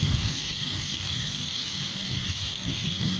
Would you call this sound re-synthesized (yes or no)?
yes